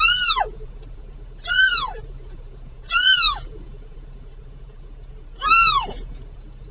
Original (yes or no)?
no